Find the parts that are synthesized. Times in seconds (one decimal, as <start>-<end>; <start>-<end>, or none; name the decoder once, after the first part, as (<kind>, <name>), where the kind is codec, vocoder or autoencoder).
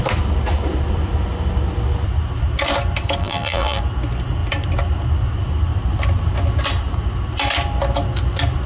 3.2-3.8 (vocoder, BigVGAN v2)